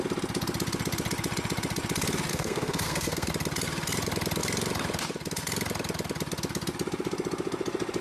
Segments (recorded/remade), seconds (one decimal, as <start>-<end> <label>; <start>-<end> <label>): 0.0-2.3 recorded; 2.3-3.3 remade; 3.3-8.0 recorded